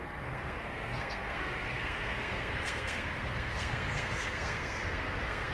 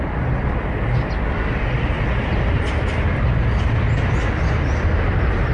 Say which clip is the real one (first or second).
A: second